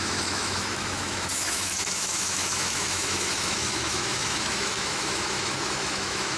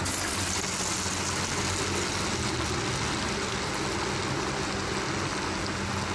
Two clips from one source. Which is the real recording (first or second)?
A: second